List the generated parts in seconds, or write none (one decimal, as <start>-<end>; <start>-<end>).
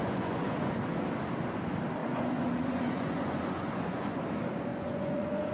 0.0-0.7; 2.0-4.2; 4.7-5.5